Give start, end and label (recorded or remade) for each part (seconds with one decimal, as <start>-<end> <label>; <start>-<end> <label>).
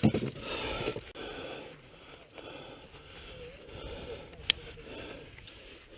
0.0-6.0 recorded